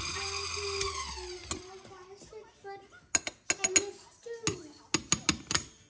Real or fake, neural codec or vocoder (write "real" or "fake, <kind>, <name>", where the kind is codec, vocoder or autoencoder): real